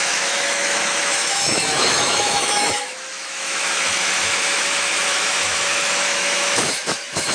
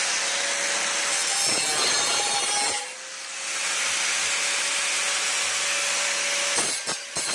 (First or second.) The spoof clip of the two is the first